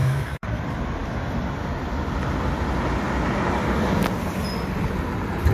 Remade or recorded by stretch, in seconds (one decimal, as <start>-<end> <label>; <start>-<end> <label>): 0.0-0.6 remade; 0.6-5.5 recorded